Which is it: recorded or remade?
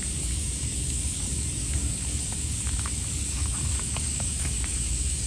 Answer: remade